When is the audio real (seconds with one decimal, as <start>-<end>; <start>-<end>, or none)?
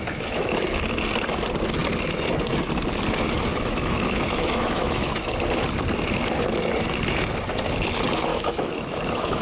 0.8-3.5; 5.3-8.3